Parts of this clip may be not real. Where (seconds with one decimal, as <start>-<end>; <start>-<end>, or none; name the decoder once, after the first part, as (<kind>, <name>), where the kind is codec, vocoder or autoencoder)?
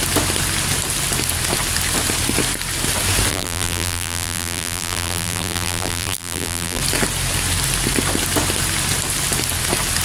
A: 3.3-6.8 (vocoder, BigVGAN v2)